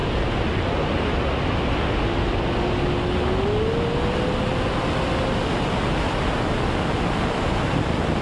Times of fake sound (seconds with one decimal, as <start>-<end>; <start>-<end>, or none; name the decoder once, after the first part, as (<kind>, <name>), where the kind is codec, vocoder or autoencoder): none